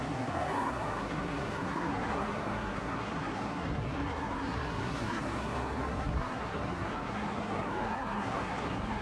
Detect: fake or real fake